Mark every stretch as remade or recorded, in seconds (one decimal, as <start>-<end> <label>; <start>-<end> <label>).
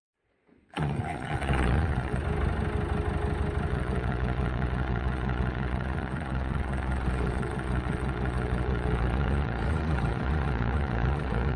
0.0-2.2 remade; 2.2-3.7 recorded; 3.7-11.6 remade